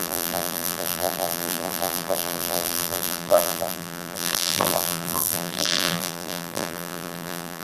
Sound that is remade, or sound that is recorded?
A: remade